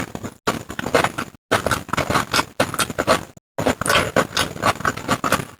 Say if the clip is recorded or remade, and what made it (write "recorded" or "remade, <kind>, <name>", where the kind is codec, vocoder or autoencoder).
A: recorded